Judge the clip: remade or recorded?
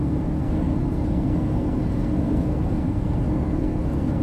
remade